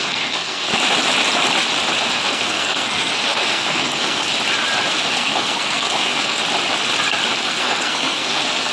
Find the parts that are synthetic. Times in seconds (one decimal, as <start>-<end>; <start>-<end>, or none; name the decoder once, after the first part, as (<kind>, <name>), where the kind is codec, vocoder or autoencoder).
0.0-0.7 (codec, SNAC); 2.1-4.3; 4.9-6.4; 7.4-8.7